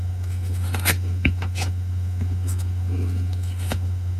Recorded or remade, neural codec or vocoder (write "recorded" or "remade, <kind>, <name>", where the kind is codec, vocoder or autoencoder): remade, autoencoder, DAC-VAE